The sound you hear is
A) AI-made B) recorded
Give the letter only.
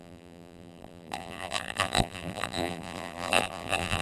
A